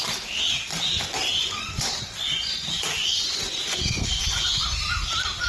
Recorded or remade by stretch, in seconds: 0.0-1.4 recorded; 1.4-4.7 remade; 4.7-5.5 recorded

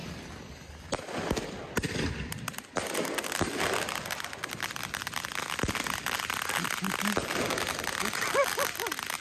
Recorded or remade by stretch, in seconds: 0.0-9.2 recorded

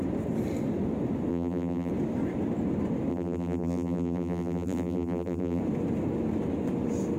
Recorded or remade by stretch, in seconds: 0.0-1.3 recorded; 1.3-1.9 remade; 1.9-3.1 recorded; 3.1-5.6 remade; 5.6-7.2 recorded

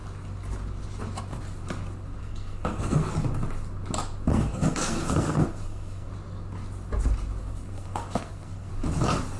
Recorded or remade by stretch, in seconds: 0.0-2.2 recorded; 2.2-3.1 remade; 3.1-4.3 recorded; 4.3-6.1 remade; 6.1-7.4 recorded; 7.4-8.7 remade; 8.7-9.4 recorded